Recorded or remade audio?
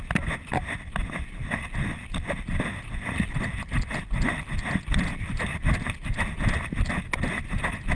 recorded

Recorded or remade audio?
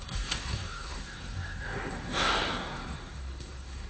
remade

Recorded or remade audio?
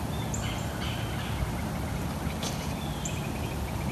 recorded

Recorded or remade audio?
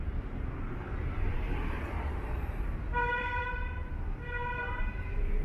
remade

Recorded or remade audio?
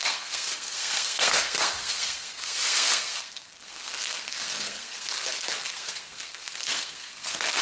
remade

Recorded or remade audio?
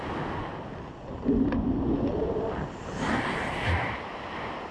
recorded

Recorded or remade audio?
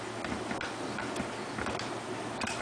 recorded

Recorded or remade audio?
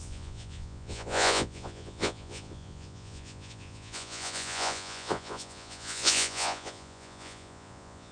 remade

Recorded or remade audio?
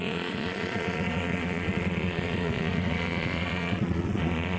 remade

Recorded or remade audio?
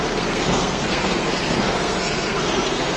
remade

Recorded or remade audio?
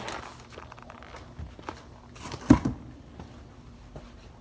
recorded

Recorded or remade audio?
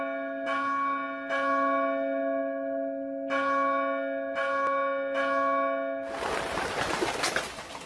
recorded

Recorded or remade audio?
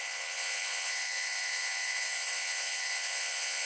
remade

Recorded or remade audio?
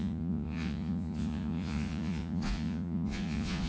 remade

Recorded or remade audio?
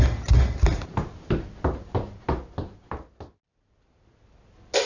recorded